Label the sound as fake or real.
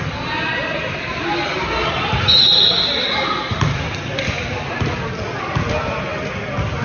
real